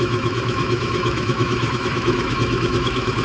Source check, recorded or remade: remade